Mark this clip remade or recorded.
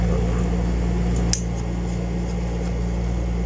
recorded